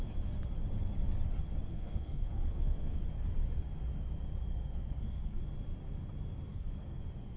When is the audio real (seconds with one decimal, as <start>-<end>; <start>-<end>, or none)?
0.0-1.7; 3.0-4.5; 5.4-6.5; 7.0-7.4